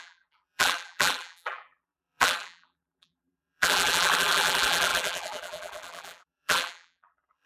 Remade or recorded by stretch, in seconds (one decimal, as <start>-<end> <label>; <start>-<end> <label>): 0.0-7.5 remade